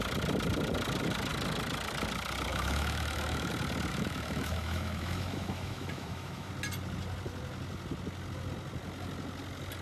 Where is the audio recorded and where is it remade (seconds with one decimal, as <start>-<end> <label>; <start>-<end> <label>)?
0.0-2.5 recorded; 2.5-3.5 remade; 3.5-3.9 recorded; 3.9-6.5 remade; 6.5-9.8 recorded